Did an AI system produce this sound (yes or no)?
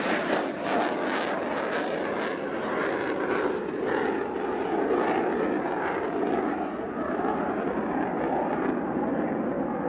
no